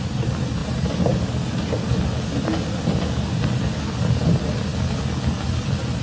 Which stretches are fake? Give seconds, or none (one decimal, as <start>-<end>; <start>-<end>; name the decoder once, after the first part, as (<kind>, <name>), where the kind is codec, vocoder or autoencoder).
none